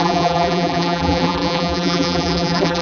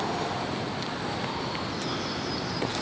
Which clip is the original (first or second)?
second